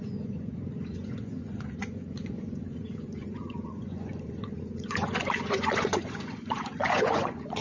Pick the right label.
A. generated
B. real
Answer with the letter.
A